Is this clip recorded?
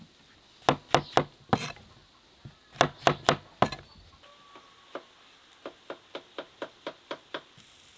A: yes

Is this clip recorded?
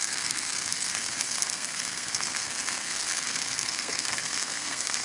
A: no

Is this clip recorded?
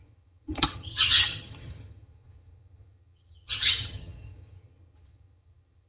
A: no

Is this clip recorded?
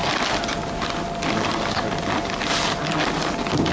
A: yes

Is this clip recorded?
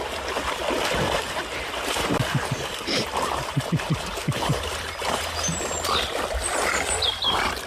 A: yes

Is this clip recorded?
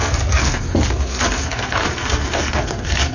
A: no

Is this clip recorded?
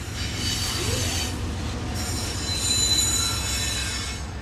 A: yes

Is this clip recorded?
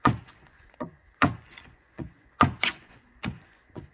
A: no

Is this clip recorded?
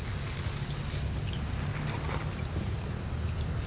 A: yes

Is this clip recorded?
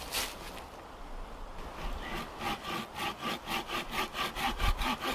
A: yes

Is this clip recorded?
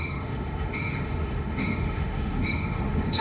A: no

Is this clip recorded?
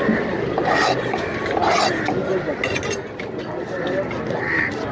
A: yes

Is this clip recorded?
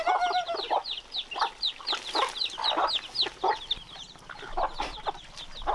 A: yes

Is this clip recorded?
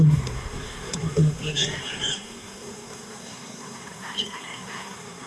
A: no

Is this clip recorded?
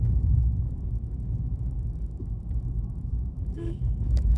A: no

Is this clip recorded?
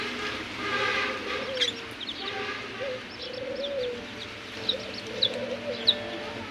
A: yes